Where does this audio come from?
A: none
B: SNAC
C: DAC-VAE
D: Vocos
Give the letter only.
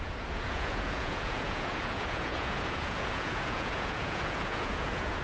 D